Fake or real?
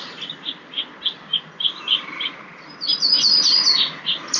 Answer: real